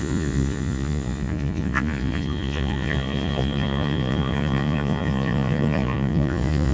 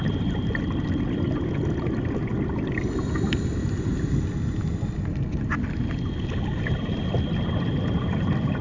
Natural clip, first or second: second